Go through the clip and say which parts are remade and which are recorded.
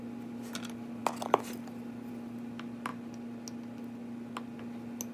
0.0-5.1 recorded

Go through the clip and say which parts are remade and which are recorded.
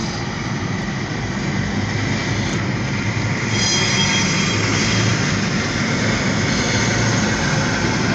0.0-8.1 recorded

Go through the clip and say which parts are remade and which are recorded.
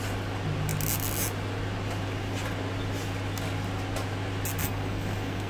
0.0-4.6 recorded; 4.6-5.5 remade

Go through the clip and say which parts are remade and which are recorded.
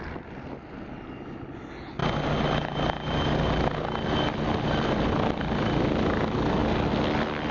0.0-7.5 recorded